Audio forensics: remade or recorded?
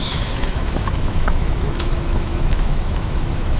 remade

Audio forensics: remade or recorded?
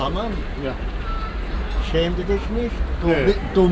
recorded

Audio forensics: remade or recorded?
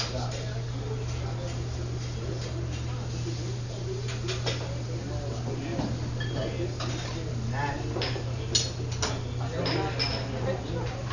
recorded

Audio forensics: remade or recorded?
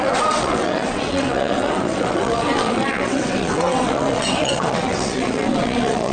remade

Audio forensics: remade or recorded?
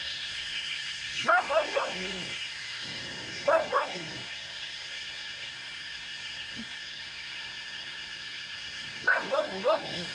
remade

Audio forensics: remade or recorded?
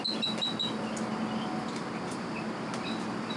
recorded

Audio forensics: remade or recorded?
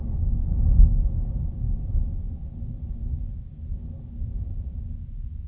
recorded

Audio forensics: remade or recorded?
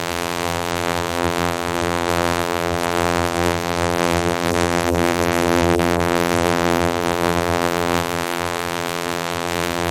remade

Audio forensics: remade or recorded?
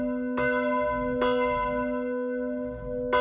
recorded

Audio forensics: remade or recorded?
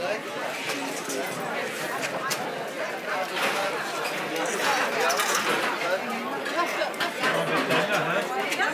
recorded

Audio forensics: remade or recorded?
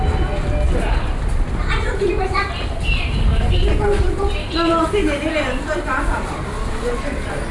recorded